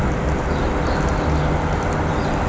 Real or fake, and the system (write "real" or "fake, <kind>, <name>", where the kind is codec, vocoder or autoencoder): real